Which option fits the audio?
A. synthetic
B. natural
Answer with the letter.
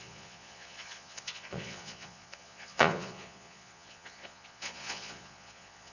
A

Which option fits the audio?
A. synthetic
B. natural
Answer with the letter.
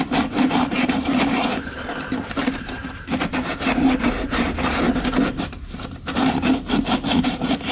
A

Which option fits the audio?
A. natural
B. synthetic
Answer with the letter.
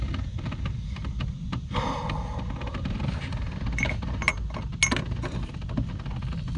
A